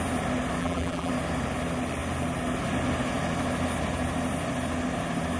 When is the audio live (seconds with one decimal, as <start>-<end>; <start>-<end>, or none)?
0.0-0.6; 1.1-5.4